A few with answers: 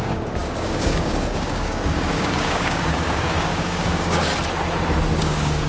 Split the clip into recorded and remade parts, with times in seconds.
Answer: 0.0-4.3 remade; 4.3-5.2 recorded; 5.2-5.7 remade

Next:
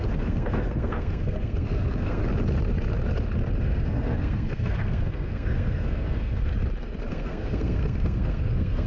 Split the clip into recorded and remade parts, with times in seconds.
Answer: 0.0-2.2 remade; 2.2-3.6 recorded; 3.6-6.5 remade; 6.5-7.1 recorded; 7.1-8.9 remade

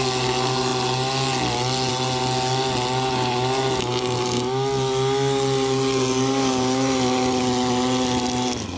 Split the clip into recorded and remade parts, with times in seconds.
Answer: 0.0-8.8 recorded

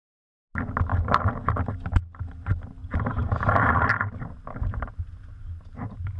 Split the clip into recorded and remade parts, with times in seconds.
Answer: 0.0-0.9 recorded; 0.9-1.5 remade; 1.5-2.8 recorded; 2.8-3.9 remade; 3.9-6.2 recorded

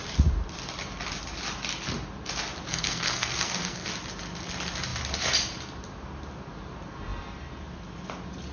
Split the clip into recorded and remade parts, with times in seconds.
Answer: 0.0-2.7 recorded; 2.7-3.9 remade; 3.9-8.5 recorded

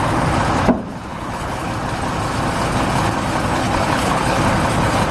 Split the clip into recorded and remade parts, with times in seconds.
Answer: 0.0-1.1 recorded; 1.1-1.7 remade; 1.7-3.5 recorded; 3.5-4.4 remade; 4.4-5.1 recorded

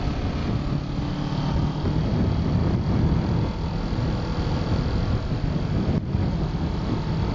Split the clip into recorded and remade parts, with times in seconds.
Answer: 0.0-7.3 recorded

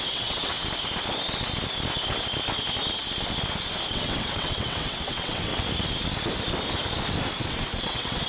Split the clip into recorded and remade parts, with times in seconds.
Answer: 0.0-0.5 remade; 0.5-3.9 recorded; 3.9-5.5 remade; 5.5-7.4 recorded; 7.4-8.3 remade